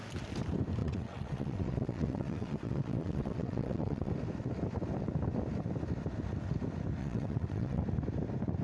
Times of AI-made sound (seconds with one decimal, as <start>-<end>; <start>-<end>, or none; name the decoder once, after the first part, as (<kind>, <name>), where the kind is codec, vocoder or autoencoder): 0.8-4.1 (vocoder, WaveNeXt); 7.0-7.8